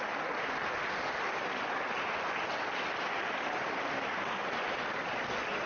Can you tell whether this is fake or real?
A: real